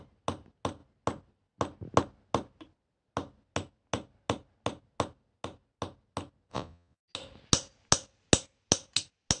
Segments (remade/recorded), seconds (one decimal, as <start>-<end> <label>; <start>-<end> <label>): 0.0-6.5 recorded; 6.5-7.0 remade; 7.0-9.4 recorded